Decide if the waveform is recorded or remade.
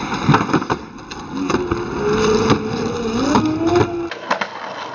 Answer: recorded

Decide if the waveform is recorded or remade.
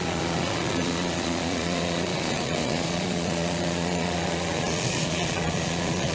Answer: remade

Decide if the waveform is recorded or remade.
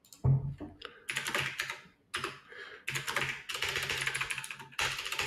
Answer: recorded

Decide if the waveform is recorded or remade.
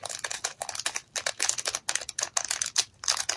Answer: recorded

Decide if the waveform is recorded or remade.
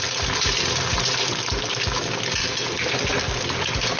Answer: recorded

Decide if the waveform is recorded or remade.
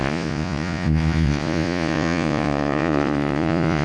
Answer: remade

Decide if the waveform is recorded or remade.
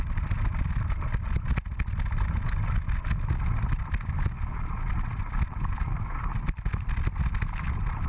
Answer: recorded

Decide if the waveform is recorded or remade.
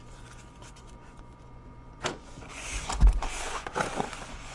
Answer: remade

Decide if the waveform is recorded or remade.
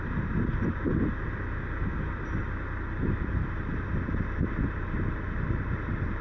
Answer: recorded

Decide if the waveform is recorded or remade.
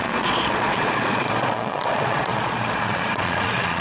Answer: remade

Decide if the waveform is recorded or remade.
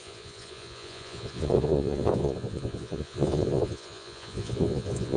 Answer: remade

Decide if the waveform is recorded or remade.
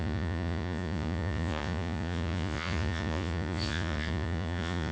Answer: remade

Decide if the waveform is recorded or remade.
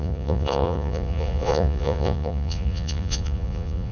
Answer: remade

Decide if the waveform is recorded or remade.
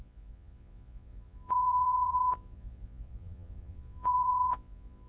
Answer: remade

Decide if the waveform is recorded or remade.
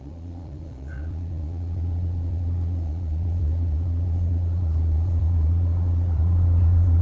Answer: remade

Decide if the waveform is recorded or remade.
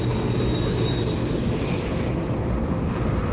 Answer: recorded